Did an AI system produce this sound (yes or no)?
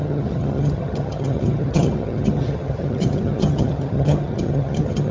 yes